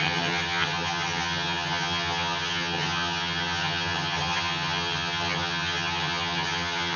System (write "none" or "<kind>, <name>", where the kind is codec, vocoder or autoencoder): vocoder, HiFi-GAN